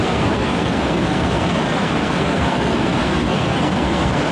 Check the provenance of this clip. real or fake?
fake